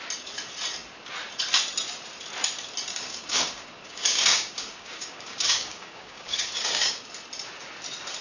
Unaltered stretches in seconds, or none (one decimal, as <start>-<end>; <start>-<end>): 0.0-2.9; 7.1-8.2